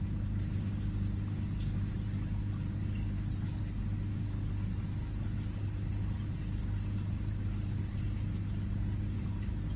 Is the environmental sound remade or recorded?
recorded